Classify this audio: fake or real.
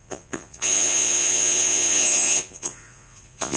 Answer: fake